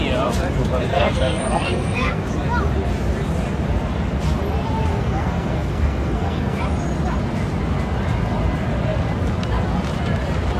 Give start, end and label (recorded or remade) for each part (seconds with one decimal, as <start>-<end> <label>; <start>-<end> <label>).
0.0-0.9 recorded; 0.9-2.3 remade; 2.3-4.9 recorded; 4.9-6.6 remade; 6.6-10.6 recorded